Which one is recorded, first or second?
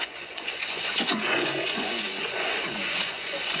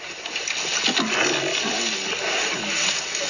second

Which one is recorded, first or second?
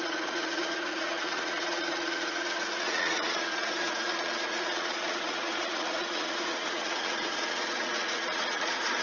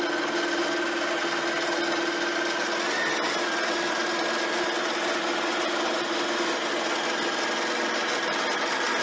second